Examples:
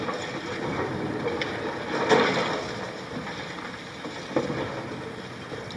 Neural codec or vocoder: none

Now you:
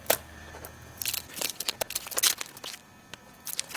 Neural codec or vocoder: none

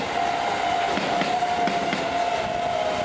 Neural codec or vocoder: none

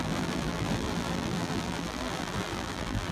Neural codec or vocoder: vocoder, BigVGAN v2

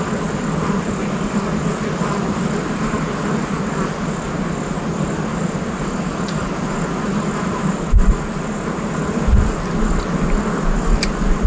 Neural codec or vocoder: none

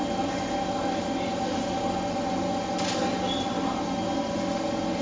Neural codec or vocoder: none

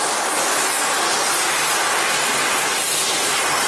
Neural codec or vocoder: none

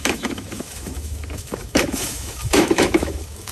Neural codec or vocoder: autoencoder, DAC-VAE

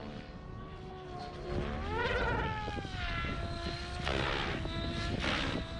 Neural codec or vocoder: none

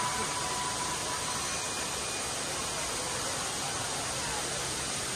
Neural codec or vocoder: none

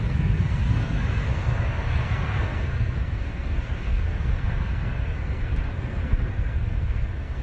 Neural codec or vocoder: codec, SNAC